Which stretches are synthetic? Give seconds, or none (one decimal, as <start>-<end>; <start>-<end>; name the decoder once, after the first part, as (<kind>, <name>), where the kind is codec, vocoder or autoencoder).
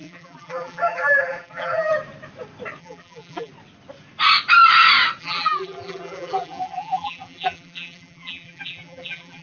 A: 0.0-1.9 (vocoder, BigVGAN v2); 2.8-3.5; 5.2-9.4